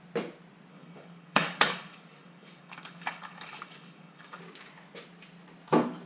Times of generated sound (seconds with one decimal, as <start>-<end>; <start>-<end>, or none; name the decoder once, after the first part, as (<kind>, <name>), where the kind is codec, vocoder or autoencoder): 0.7-4.4 (codec, DAC)